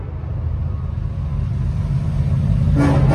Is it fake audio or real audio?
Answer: real